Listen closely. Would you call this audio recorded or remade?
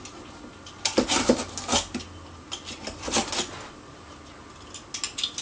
recorded